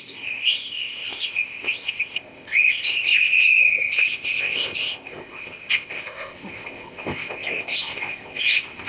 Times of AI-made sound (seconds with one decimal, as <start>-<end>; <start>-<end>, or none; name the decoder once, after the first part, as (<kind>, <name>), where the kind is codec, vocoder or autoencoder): 0.0-8.9 (codec, ZipCodec)